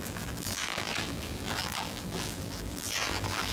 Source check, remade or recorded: remade